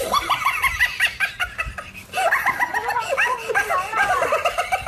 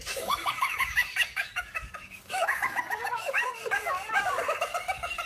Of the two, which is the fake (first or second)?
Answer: second